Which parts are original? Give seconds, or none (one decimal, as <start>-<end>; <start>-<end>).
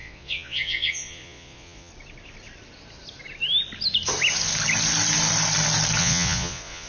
1.9-6.0